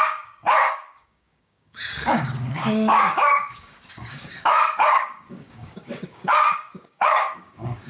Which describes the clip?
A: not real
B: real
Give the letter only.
A